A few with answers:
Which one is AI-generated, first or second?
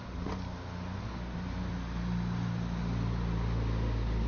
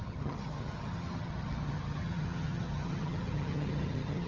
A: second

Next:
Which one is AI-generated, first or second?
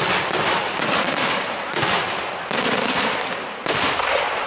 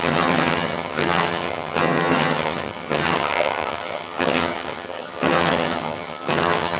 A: second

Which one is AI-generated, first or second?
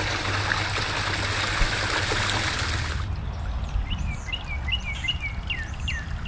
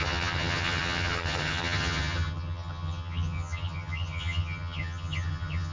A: second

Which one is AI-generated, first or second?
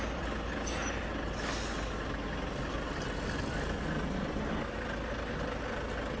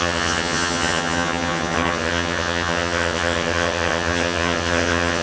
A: second